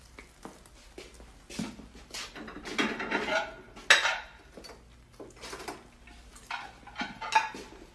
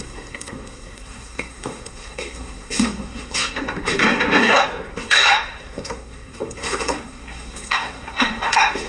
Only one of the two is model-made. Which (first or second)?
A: second